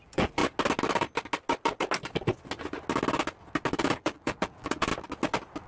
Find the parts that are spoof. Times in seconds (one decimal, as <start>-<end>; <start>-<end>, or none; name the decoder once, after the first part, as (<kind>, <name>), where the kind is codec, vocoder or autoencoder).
0.0-0.4 (vocoder, BigVGAN v2); 3.8-4.9

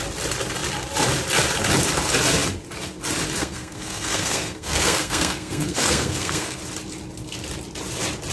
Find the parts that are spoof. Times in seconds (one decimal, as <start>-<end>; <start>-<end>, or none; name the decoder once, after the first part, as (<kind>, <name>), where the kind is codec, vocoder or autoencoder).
3.4-6.6 (codec, SNAC)